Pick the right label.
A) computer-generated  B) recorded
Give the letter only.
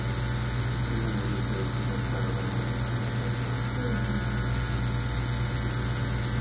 B